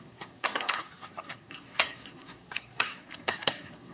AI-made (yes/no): yes